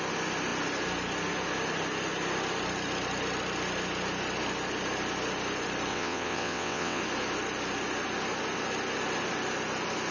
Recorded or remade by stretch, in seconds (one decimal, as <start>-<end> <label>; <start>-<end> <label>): 0.0-5.9 recorded; 5.9-7.0 remade; 7.0-10.1 recorded

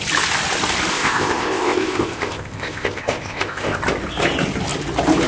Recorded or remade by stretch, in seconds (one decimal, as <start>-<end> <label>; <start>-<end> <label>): 0.0-0.9 recorded; 0.9-3.8 remade; 3.8-5.3 recorded

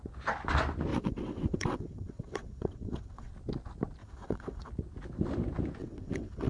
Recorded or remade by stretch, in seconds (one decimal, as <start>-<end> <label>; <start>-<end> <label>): 0.0-0.9 recorded; 0.9-3.3 remade; 3.3-4.0 recorded; 4.0-4.7 remade; 4.7-5.8 recorded; 5.8-6.5 remade

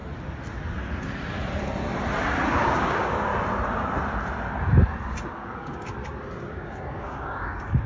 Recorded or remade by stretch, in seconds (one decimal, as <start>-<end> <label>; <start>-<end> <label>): 0.0-2.5 recorded; 2.5-3.3 remade; 3.3-5.2 recorded; 5.2-6.0 remade; 6.0-6.5 recorded; 6.5-7.9 remade

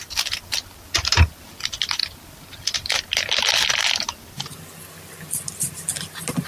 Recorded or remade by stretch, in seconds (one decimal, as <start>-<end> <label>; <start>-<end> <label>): 0.0-6.5 recorded

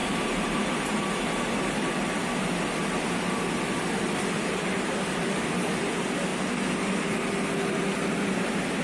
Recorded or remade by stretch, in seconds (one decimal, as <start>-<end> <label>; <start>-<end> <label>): 0.0-1.9 remade; 1.9-8.8 recorded

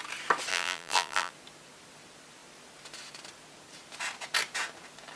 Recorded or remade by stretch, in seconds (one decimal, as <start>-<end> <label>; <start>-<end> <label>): 0.0-0.5 recorded; 0.5-1.3 remade; 1.3-5.2 recorded